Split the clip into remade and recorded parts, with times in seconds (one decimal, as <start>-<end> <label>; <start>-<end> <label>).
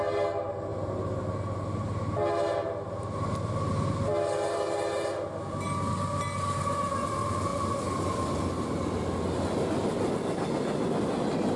0.0-11.6 recorded